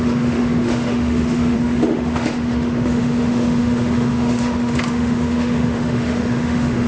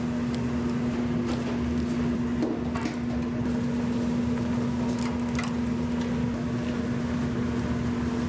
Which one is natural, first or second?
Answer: second